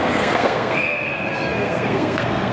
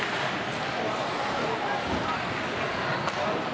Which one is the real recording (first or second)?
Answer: second